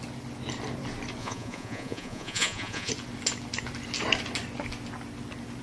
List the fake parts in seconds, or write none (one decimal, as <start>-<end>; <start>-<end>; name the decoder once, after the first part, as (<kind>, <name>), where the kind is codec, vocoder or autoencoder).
1.2-2.9 (vocoder, Vocos)